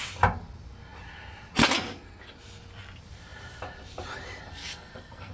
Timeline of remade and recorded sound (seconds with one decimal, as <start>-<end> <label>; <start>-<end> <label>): 0.0-4.5 recorded; 4.5-5.3 remade